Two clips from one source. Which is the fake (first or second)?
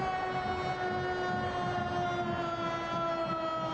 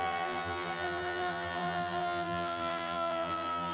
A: second